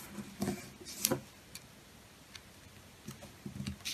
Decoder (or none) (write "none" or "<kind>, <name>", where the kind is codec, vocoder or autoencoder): none